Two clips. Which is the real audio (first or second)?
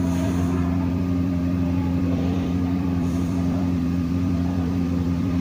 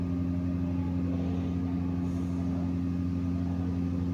second